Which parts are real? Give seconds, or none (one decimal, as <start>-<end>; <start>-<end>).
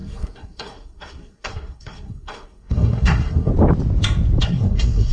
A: 3.5-4.4